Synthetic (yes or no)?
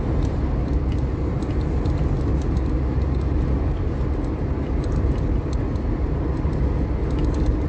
no